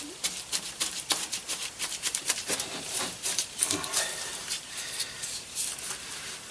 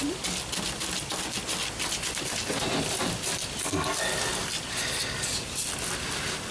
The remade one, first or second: first